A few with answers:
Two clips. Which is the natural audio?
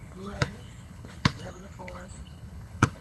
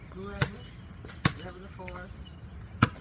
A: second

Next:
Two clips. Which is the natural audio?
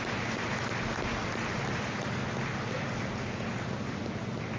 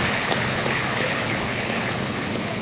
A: first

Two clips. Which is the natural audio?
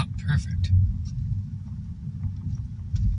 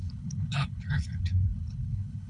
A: first